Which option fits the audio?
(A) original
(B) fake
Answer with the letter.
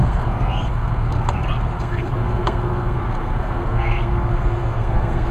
B